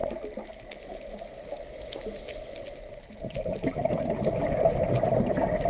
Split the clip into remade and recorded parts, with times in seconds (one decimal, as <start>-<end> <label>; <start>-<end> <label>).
0.0-2.3 recorded; 2.3-2.9 remade; 2.9-5.7 recorded

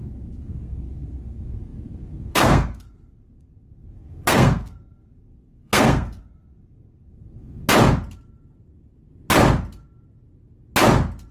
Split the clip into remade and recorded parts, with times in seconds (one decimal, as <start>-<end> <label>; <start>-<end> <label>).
0.0-7.6 remade; 7.6-11.3 recorded

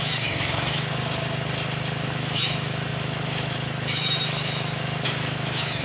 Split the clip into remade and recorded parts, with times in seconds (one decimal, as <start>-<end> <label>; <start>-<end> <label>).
0.0-1.0 remade; 1.0-2.1 recorded; 2.1-5.8 remade